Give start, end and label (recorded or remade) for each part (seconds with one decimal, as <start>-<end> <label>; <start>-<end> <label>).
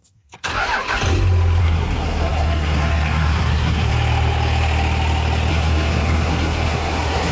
0.0-0.5 remade; 0.5-1.6 recorded; 1.6-3.9 remade; 3.9-5.5 recorded; 5.5-7.3 remade